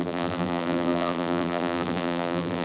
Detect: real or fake fake